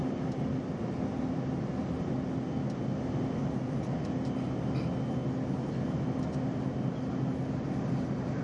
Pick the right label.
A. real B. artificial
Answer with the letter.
A